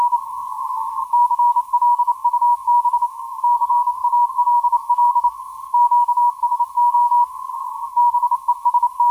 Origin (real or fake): fake